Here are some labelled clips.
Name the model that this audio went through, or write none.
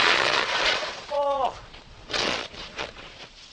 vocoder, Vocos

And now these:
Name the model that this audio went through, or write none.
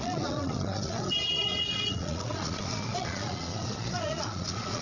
vocoder, Vocos